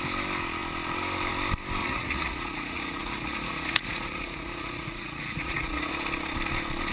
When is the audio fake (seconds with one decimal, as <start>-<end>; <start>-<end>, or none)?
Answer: 1.8-5.9